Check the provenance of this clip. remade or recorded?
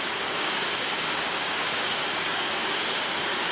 remade